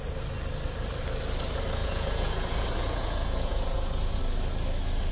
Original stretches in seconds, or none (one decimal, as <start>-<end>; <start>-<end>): 0.0-1.8; 4.2-5.1